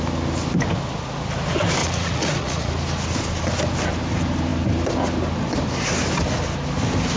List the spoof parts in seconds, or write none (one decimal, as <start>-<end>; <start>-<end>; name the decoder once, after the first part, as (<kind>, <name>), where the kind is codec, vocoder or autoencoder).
1.8-2.7 (vocoder, Vocos)